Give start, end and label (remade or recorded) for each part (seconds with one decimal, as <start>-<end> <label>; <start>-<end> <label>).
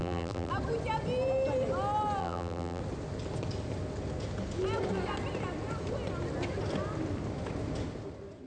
0.0-0.5 remade; 0.5-2.2 recorded; 2.2-2.8 remade; 2.8-8.5 recorded